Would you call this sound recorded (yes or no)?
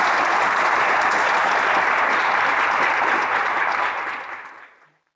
yes